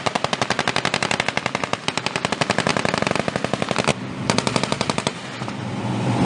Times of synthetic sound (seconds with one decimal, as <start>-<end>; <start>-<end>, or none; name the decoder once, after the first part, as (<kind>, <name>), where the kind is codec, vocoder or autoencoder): none